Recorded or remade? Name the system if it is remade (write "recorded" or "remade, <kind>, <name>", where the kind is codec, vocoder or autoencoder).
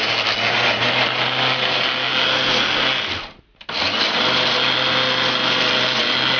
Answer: recorded